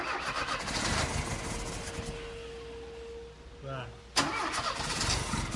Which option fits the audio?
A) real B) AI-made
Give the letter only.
A